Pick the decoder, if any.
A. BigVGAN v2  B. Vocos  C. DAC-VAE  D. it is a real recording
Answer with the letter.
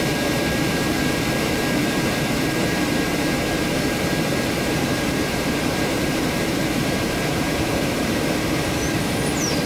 A